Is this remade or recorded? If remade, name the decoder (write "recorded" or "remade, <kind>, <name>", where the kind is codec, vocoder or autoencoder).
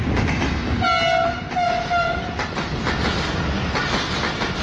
recorded